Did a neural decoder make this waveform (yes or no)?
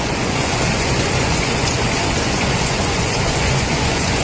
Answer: yes